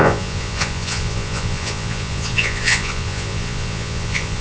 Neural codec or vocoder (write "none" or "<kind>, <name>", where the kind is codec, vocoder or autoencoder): vocoder, Vocos